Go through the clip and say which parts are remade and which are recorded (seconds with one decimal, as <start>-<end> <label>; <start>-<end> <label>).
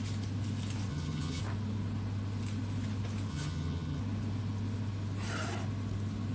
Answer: 0.0-0.9 recorded; 0.9-1.4 remade; 1.4-3.3 recorded; 3.3-4.0 remade; 4.0-6.3 recorded